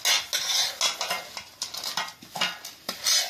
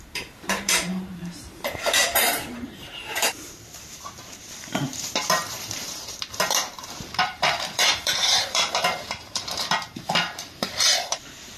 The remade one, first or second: second